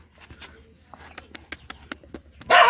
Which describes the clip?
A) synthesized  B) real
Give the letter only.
B